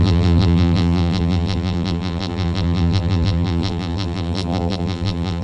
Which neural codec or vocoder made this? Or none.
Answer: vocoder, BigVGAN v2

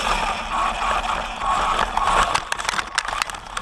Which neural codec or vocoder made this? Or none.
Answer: none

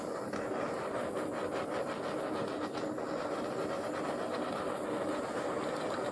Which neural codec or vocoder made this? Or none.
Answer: none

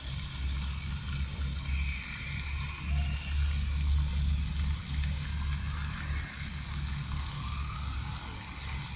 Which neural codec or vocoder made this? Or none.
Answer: none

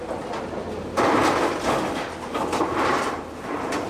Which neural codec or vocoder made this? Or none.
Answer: none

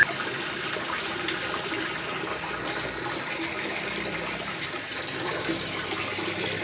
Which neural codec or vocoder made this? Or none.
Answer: vocoder, BigVGAN v2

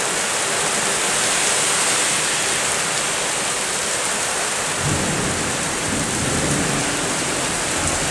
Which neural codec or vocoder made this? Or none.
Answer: vocoder, BigVGAN v2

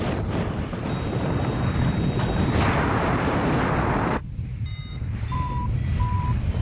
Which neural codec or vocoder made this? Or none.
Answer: vocoder, BigVGAN v2